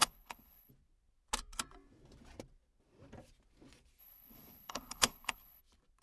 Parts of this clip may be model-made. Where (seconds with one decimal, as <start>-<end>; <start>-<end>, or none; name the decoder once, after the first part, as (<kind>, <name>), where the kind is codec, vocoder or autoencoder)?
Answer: 0.0-0.7 (codec, HILCodec); 4.0-5.6